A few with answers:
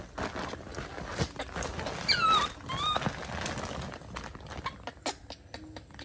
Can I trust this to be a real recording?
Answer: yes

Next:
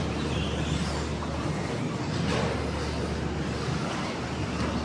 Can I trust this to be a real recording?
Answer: yes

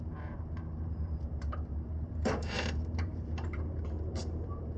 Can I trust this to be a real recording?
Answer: no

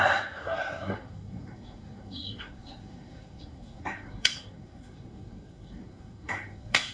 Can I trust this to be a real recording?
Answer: no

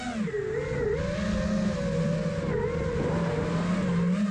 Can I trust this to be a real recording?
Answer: yes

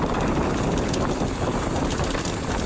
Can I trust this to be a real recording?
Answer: yes